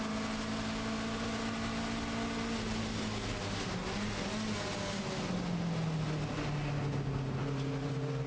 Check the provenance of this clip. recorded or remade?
recorded